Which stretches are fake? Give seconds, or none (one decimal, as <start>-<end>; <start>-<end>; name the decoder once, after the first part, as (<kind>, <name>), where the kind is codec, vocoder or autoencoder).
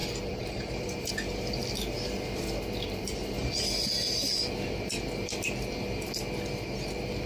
0.0-1.1 (vocoder, BigVGAN v2)